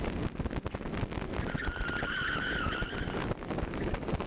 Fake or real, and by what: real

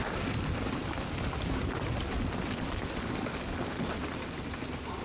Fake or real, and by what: real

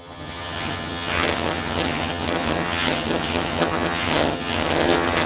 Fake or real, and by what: fake, vocoder, HiFi-GAN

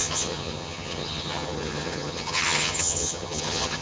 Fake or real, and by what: fake, vocoder, HiFi-GAN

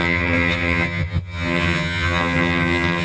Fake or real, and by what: fake, vocoder, HiFi-GAN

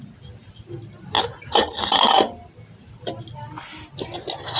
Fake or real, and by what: real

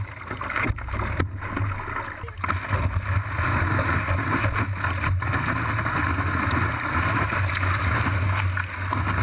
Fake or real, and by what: real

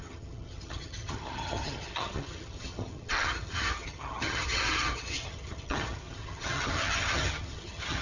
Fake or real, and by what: fake, vocoder, HiFi-GAN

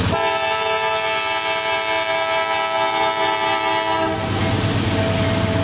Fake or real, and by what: real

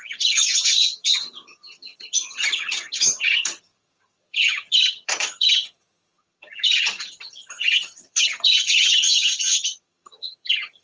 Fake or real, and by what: fake, vocoder, HiFi-GAN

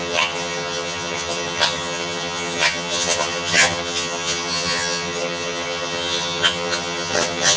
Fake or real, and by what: fake, vocoder, HiFi-GAN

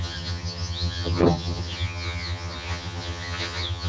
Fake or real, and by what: fake, vocoder, HiFi-GAN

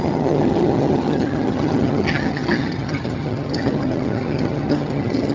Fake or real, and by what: fake, vocoder, HiFi-GAN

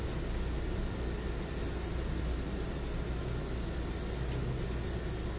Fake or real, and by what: real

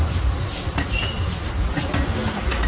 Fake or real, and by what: real